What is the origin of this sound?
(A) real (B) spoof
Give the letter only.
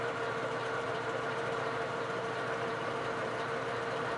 B